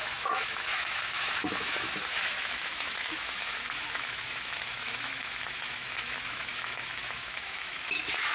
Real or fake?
fake